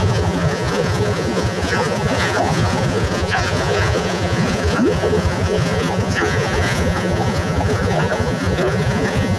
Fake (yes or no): yes